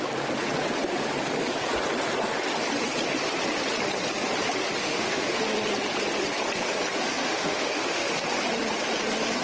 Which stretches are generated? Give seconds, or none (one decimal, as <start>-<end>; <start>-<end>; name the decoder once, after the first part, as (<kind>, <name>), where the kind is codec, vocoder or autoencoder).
4.8-5.4 (autoencoder, DAC-VAE); 7.2-8.1